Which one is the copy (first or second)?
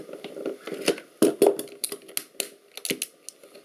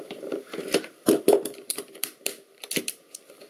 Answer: second